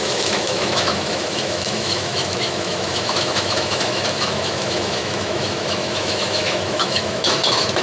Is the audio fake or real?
fake